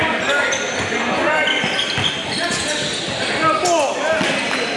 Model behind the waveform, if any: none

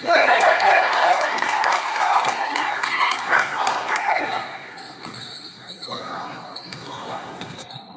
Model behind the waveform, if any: codec, SNAC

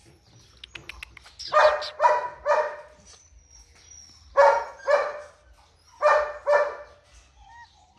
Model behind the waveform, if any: none